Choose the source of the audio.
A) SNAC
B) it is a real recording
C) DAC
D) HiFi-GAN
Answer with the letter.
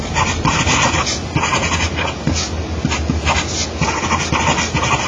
B